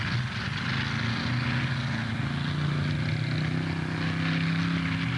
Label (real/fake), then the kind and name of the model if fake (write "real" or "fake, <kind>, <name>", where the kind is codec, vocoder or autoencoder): real